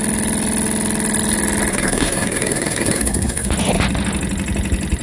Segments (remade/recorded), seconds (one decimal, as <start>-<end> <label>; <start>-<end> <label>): 0.0-1.7 recorded; 1.7-3.5 remade; 3.5-5.0 recorded